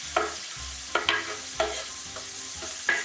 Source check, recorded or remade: recorded